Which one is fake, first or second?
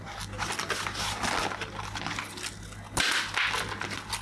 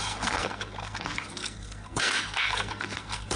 second